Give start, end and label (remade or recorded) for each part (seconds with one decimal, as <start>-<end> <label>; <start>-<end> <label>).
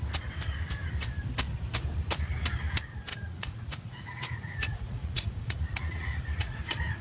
0.0-3.1 recorded; 3.1-6.6 remade; 6.6-7.0 recorded